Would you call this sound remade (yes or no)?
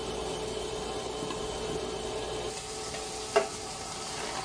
no